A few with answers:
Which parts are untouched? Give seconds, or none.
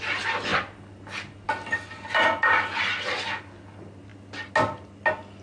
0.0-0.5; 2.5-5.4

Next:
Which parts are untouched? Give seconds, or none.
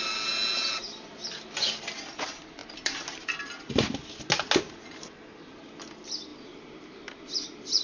0.0-2.6; 4.0-6.3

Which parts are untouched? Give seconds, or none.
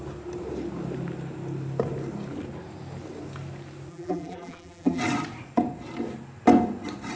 0.0-3.9; 5.0-7.2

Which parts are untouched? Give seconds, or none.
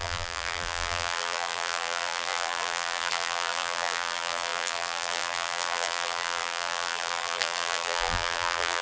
none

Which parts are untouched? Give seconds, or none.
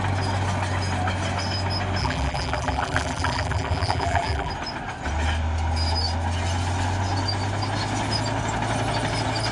0.0-2.0; 4.5-9.5